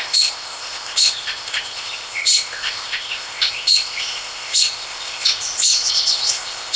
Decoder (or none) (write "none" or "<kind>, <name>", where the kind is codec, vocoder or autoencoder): codec, ZipCodec